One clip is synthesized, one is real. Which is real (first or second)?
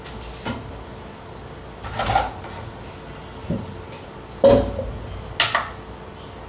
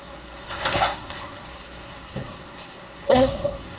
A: first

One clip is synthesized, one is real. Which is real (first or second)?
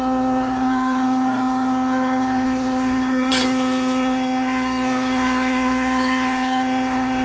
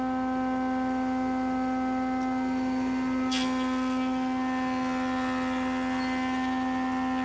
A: second